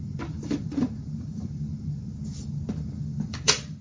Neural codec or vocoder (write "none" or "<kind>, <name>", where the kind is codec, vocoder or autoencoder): vocoder, BigVGAN v2